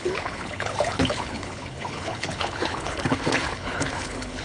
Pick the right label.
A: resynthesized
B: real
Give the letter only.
A